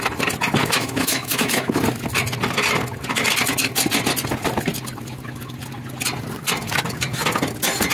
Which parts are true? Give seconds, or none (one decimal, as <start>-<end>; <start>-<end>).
0.0-0.6; 1.8-7.9